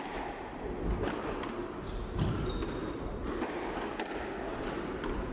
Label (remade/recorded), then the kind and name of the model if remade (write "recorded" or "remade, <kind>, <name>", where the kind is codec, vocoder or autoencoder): recorded